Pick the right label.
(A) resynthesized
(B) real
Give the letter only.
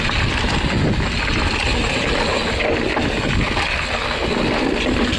B